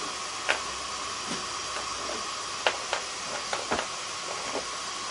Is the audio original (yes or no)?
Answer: yes